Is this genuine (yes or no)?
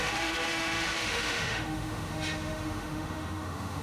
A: no